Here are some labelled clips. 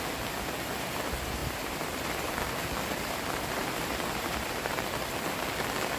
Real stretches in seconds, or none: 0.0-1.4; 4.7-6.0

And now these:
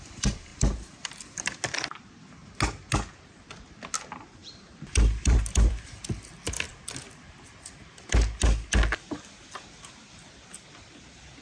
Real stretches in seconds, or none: 0.0-4.4; 6.0-11.4

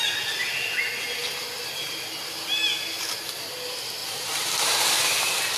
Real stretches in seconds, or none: 0.0-5.6

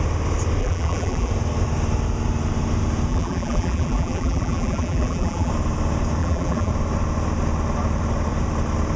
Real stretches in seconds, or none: 0.0-0.6; 1.3-3.1; 5.5-6.2; 6.7-9.0

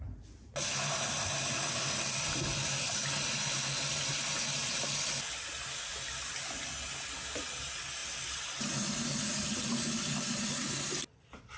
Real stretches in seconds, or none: 0.0-11.6

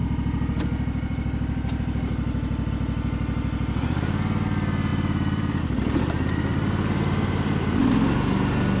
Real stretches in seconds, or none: 2.7-4.9; 5.6-6.5; 7.8-8.8

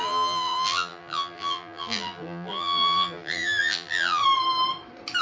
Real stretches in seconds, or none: 4.2-5.2